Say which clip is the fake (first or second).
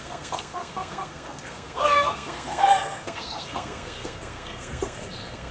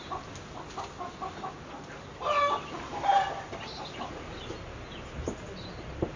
first